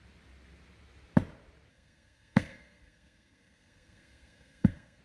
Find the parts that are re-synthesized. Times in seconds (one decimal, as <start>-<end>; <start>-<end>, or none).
1.7-5.0